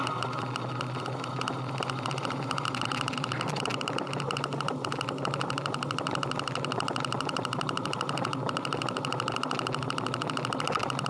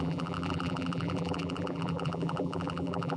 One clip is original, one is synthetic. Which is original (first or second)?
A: first